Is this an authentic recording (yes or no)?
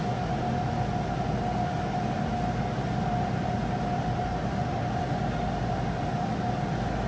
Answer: yes